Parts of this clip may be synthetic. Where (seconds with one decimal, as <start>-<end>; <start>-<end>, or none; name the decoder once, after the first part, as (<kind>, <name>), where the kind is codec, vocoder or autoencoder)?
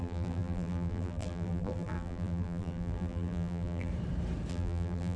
0.0-3.9 (vocoder, BigVGAN v2); 4.5-5.2